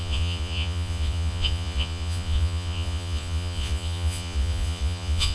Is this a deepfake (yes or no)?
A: yes